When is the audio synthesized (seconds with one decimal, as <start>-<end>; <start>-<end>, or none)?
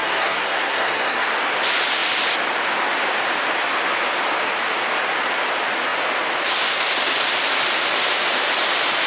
0.0-1.3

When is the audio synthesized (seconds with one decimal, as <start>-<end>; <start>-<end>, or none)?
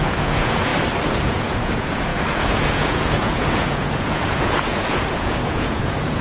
0.0-0.7; 1.2-6.2